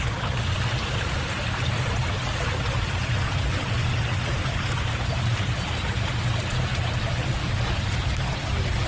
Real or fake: real